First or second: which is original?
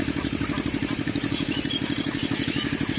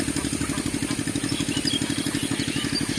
second